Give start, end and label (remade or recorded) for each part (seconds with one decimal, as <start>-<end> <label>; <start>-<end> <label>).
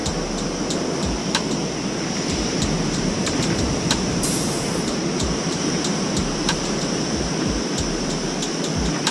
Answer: 0.0-2.1 recorded; 2.1-9.1 remade